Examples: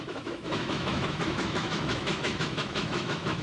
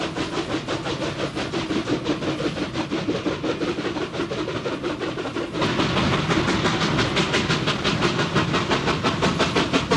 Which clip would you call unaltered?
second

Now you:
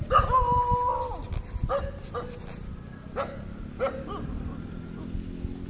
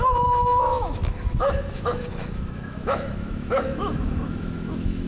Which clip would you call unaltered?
first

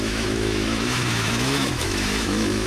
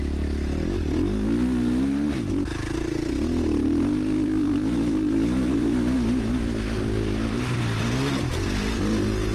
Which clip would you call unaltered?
second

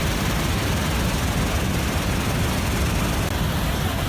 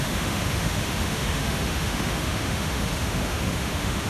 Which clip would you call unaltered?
first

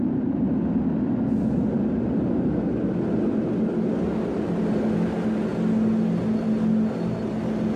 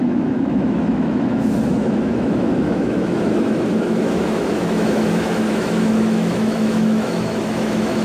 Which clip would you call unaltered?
first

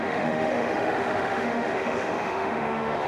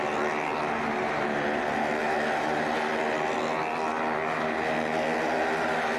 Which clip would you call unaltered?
second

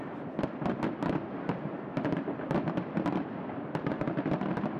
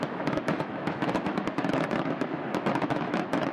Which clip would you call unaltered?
first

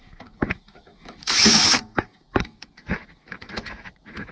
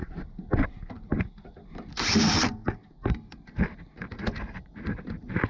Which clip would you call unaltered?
second